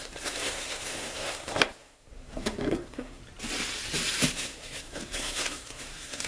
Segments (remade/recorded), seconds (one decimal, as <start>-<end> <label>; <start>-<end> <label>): 0.0-3.2 remade; 3.2-4.3 recorded; 4.3-6.3 remade